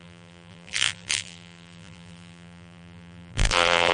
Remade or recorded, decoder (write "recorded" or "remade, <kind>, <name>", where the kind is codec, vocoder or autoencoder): remade, vocoder, BigVGAN v2